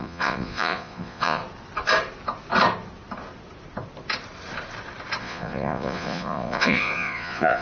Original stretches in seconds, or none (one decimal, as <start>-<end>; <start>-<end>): 1.4-5.2